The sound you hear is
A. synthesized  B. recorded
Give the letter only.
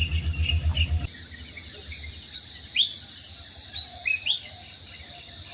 B